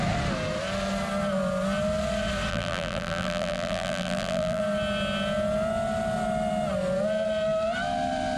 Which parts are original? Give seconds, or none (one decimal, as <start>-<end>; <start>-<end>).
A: 0.0-2.5; 4.6-8.4